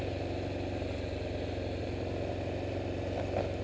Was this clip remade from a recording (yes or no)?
no